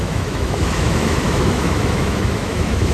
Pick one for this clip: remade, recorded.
remade